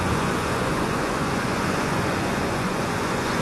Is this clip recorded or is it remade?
remade